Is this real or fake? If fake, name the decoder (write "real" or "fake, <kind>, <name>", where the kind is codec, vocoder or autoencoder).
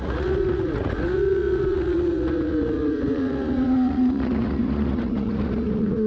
fake, vocoder, Vocos